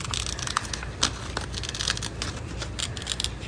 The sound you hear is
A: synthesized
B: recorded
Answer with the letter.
B